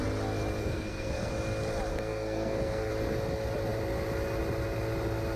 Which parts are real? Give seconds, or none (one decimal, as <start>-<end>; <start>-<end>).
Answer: 0.0-0.6; 1.3-1.9; 2.9-5.4